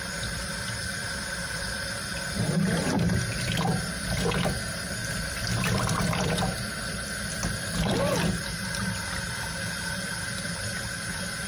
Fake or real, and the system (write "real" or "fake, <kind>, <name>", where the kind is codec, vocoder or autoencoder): fake, vocoder, BigVGAN v2